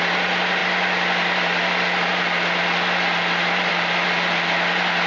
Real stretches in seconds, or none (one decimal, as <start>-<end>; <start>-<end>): 0.0-5.1